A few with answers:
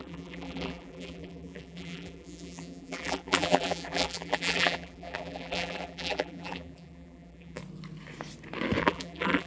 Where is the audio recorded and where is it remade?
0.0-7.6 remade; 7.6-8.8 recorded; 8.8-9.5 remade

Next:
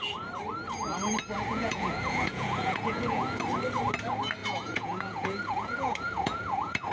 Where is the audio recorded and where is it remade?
0.0-1.5 recorded; 1.5-3.4 remade; 3.4-4.4 recorded; 4.4-6.9 remade

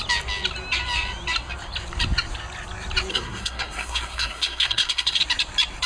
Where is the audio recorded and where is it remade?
0.0-3.1 recorded; 3.1-5.2 remade; 5.2-5.9 recorded

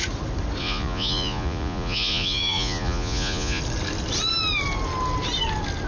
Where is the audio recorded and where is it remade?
0.0-0.6 recorded; 0.6-3.6 remade; 3.6-5.9 recorded

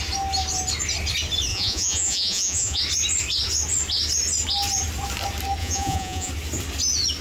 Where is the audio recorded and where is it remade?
0.0-1.5 recorded; 1.5-2.8 remade; 2.8-5.6 recorded; 5.6-6.3 remade; 6.3-7.2 recorded

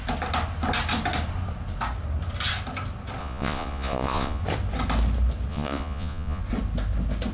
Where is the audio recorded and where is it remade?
0.0-3.2 recorded; 3.2-4.4 remade; 4.4-5.5 recorded; 5.5-6.4 remade; 6.4-7.3 recorded

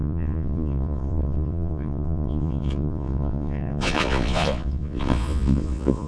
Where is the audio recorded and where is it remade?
0.0-6.1 remade

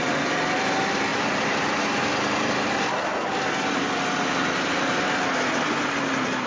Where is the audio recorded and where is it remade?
0.0-6.5 recorded